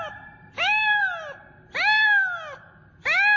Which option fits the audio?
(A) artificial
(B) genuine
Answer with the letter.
B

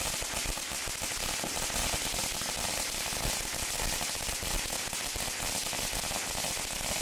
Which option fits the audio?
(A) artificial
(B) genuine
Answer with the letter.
B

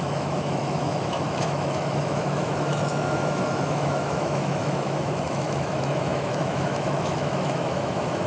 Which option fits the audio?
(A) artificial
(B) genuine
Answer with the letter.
A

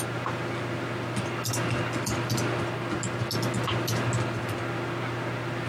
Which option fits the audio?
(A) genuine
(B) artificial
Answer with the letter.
A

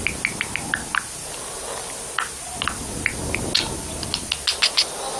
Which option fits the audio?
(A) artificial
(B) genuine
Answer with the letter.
B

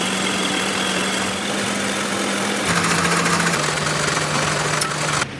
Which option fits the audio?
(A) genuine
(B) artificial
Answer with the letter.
A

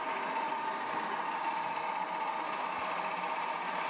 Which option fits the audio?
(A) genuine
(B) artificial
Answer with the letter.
A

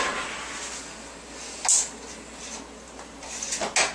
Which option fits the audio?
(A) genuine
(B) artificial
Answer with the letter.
A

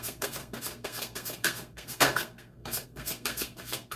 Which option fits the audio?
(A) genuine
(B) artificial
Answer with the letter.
B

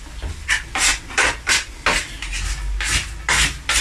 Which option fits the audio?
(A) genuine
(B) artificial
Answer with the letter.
A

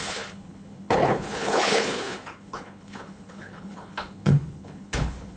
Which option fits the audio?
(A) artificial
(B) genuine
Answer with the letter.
A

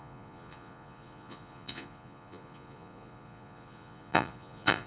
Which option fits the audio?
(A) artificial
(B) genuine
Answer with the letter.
A